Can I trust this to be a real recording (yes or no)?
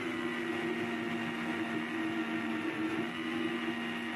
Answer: yes